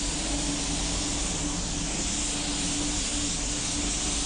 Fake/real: real